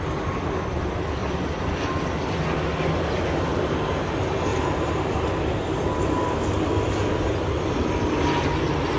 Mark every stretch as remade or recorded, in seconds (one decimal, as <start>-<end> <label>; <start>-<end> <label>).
0.0-1.2 recorded; 1.2-2.6 remade; 2.6-4.5 recorded; 4.5-8.0 remade; 8.0-9.0 recorded